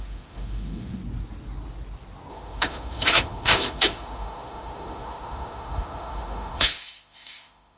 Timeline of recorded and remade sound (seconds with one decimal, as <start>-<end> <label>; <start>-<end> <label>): 0.0-1.0 remade; 1.0-2.3 recorded; 2.3-7.8 remade